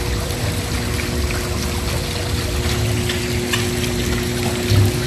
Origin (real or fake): real